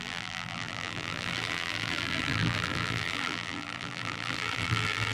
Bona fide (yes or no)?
no